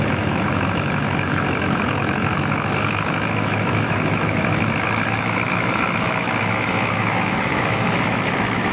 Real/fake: fake